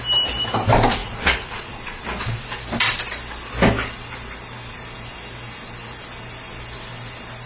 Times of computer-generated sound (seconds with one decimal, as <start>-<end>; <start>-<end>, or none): 1.0-2.0